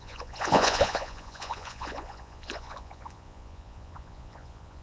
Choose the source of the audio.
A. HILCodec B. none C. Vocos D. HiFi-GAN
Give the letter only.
C